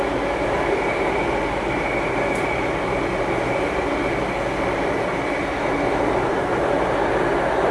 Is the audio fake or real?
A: real